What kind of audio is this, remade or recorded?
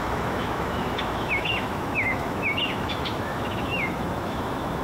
remade